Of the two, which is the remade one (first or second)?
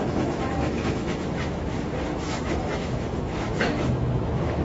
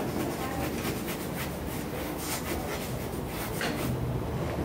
first